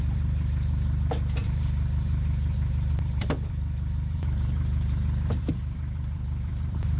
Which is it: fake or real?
fake